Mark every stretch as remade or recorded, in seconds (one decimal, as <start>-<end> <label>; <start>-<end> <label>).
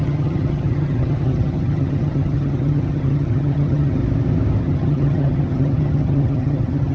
0.0-4.0 remade; 4.0-4.6 recorded; 4.6-6.9 remade